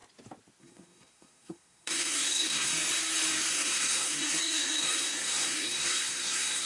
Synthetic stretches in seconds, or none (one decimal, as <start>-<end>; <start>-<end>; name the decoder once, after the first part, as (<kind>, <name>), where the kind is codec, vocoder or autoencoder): 0.6-2.7 (codec, SNAC); 3.5-6.7